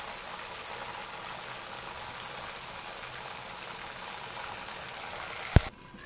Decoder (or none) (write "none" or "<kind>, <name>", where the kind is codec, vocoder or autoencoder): none